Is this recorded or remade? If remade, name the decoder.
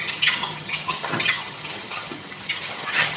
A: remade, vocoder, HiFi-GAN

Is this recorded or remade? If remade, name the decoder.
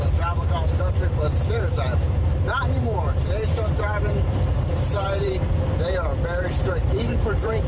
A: remade, vocoder, BigVGAN v2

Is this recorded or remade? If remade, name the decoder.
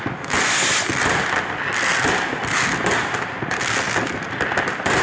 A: recorded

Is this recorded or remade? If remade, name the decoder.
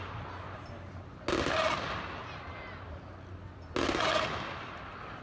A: recorded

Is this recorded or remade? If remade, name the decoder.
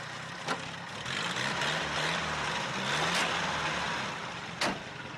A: recorded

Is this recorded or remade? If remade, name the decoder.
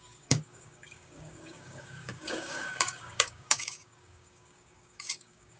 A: remade, codec, DAC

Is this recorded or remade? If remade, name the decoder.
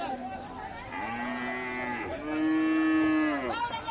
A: recorded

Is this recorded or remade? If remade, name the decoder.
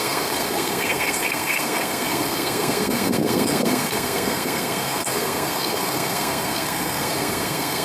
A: remade, codec, SNAC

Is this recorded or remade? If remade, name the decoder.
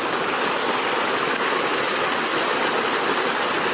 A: recorded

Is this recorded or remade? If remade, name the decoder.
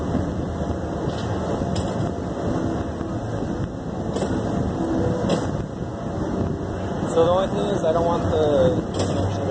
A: recorded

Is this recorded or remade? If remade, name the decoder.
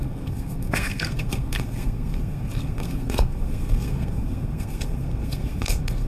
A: remade, codec, SNAC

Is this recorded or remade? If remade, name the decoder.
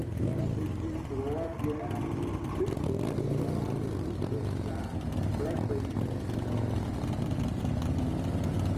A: recorded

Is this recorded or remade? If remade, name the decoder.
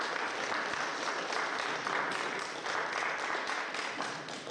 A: recorded